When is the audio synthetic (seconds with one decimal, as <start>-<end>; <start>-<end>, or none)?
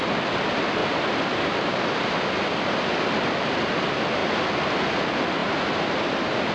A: 0.8-2.2; 5.4-6.1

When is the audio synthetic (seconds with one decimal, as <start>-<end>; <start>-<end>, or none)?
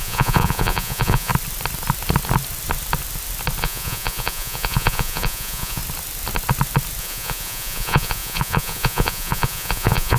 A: 0.0-1.3; 3.6-5.8; 7.0-10.2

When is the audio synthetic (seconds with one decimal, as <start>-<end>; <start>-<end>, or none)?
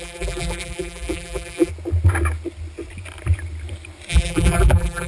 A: 0.0-1.7; 4.1-5.1